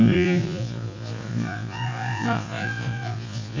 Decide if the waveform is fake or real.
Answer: fake